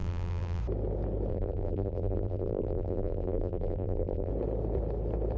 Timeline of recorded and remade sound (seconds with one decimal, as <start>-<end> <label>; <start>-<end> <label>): 0.0-0.6 remade; 0.6-1.3 recorded; 1.3-4.3 remade; 4.3-5.4 recorded